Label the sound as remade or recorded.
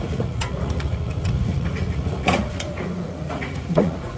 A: remade